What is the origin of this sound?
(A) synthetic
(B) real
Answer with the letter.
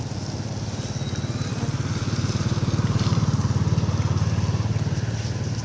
B